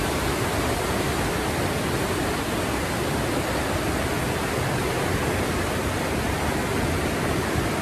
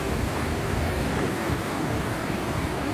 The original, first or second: first